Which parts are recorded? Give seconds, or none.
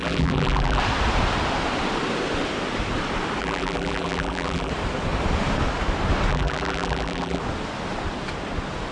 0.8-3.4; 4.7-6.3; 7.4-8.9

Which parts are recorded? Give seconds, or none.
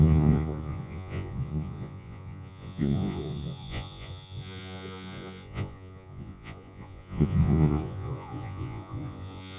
none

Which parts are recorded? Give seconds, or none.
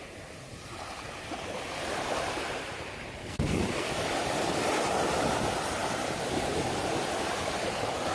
0.0-3.2; 3.9-8.1